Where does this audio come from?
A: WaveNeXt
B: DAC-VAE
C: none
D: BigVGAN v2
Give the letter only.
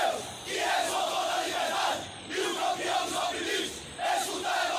C